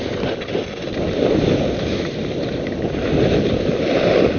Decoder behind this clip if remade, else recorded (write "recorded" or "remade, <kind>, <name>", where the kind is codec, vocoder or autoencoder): recorded